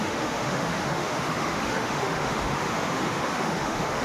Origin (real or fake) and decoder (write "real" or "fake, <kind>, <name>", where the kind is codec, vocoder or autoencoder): fake, autoencoder, DAC-VAE